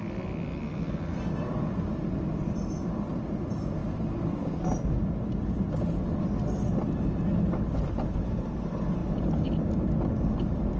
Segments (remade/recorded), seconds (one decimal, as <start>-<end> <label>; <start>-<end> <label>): 0.0-10.8 recorded